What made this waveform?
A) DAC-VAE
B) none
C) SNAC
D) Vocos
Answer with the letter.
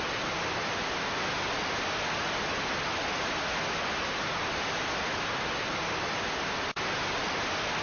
B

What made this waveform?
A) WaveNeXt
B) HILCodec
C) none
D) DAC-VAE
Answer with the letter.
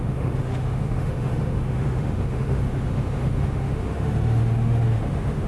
D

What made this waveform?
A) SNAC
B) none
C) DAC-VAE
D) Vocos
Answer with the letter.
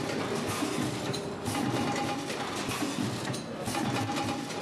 B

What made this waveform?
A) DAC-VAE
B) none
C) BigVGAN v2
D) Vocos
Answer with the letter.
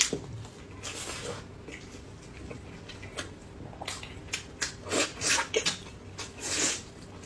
B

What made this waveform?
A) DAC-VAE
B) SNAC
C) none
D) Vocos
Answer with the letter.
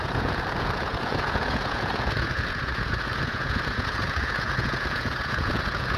D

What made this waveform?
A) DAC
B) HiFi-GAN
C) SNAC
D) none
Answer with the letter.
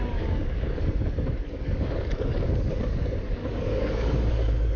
A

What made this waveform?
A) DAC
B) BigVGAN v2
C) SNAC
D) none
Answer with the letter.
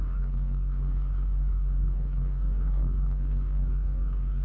A